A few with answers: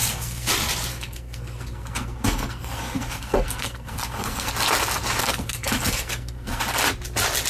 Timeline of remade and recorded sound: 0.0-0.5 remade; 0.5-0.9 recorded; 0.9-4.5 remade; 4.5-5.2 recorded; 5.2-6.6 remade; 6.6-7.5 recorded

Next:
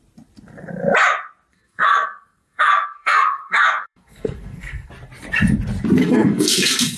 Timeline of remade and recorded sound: 0.0-1.5 recorded; 1.5-4.9 remade; 4.9-6.0 recorded; 6.0-7.0 remade

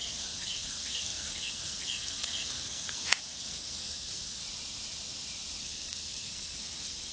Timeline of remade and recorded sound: 0.0-4.4 remade; 4.4-5.6 recorded; 5.6-7.1 remade